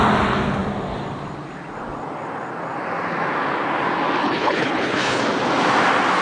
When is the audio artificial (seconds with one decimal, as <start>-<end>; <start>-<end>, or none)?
4.2-5.2

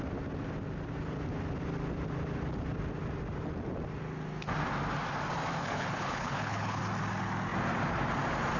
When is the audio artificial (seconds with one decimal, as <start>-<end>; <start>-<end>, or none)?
5.6-6.8